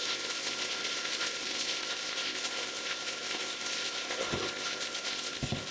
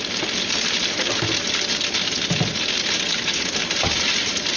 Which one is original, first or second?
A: second